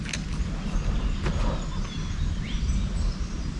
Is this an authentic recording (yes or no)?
yes